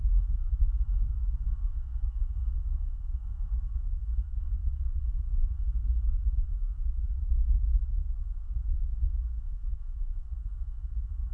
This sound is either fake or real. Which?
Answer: fake